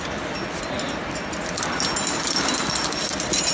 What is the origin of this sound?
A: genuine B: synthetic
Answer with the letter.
A